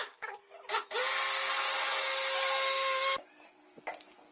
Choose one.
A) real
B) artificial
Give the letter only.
A